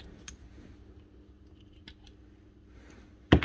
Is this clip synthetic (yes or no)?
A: no